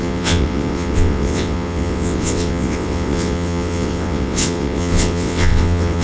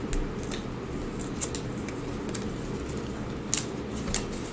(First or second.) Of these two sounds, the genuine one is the second